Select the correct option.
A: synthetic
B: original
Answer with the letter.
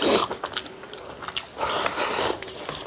B